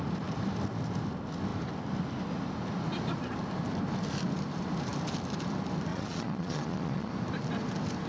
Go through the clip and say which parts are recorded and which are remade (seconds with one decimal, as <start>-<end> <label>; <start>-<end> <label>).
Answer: 0.0-5.9 recorded; 5.9-7.1 remade; 7.1-8.1 recorded

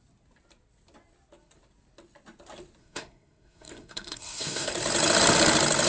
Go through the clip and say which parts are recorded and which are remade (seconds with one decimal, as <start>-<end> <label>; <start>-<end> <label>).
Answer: 0.0-2.8 recorded; 2.8-4.7 remade; 4.7-5.9 recorded

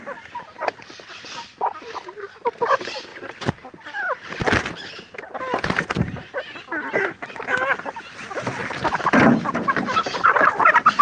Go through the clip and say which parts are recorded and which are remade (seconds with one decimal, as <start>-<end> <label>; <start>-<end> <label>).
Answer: 0.0-8.6 recorded; 8.6-9.4 remade; 9.4-11.0 recorded

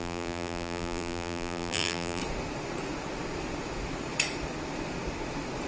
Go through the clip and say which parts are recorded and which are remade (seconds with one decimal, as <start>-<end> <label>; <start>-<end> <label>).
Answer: 0.0-2.2 remade; 2.2-5.7 recorded

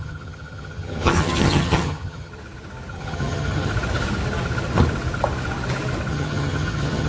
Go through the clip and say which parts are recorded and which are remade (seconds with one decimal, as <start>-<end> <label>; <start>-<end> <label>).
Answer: 0.0-2.3 remade; 2.3-2.9 recorded; 2.9-3.7 remade; 3.7-6.1 recorded; 6.1-7.1 remade

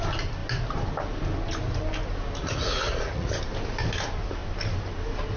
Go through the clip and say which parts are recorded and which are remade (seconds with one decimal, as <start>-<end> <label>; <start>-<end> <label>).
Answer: 0.0-2.4 recorded; 2.4-3.3 remade; 3.3-5.4 recorded